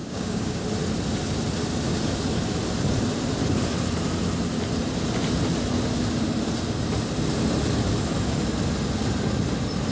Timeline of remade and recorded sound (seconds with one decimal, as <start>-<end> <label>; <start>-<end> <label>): 0.0-0.6 remade; 0.6-9.9 recorded